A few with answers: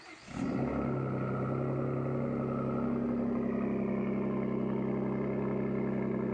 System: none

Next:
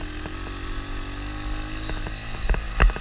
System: none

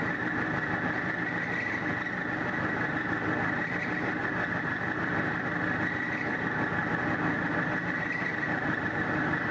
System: none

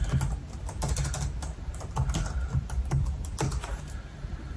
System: none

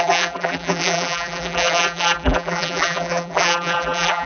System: vocoder, BigVGAN v2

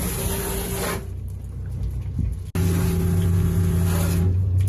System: none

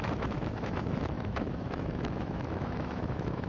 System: autoencoder, DAC-VAE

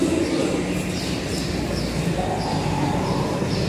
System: none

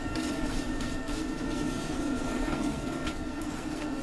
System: codec, SNAC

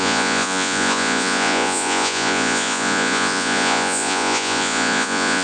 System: vocoder, Vocos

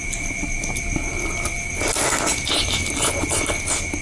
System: none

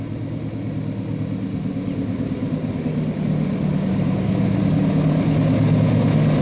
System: none